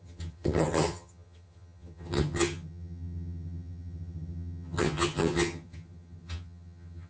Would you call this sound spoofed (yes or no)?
yes